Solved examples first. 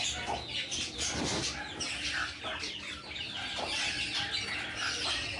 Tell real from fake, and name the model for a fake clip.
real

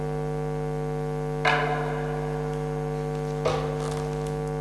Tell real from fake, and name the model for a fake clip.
real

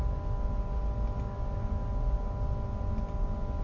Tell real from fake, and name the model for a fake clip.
real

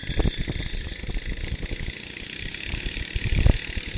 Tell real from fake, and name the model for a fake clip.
real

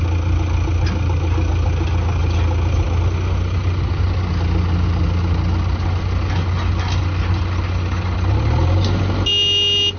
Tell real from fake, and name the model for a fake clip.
real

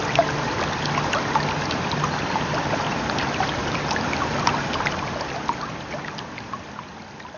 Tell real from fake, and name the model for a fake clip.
real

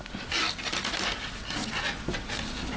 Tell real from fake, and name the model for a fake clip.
real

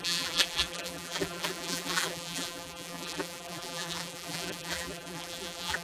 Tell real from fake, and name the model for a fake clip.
fake, vocoder, BigVGAN v2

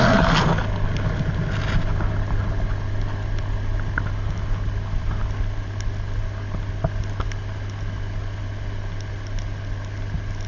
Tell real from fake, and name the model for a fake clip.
real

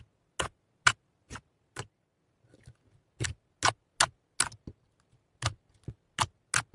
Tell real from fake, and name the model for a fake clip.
real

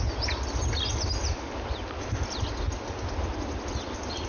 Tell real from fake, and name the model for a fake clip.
real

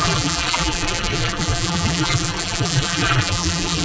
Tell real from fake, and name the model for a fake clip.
fake, vocoder, BigVGAN v2